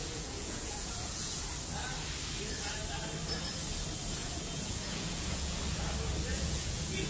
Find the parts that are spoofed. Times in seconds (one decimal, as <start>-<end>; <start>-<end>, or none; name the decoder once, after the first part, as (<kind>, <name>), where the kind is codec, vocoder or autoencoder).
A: 0.0-1.4 (vocoder, Vocos); 4.2-5.6; 6.3-7.1